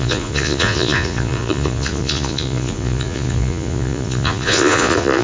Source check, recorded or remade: remade